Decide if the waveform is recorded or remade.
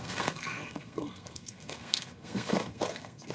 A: remade